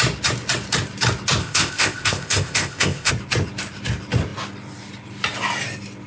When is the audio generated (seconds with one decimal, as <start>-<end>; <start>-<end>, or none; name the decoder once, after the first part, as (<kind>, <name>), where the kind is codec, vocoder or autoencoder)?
1.4-3.1 (codec, ZipCodec)